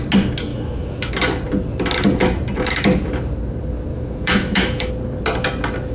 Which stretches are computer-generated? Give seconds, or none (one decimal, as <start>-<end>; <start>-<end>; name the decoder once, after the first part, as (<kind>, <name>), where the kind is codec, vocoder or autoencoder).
0.5-1.1 (autoencoder, DAC-VAE); 3.9-4.9